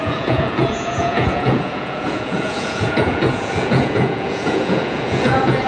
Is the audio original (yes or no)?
no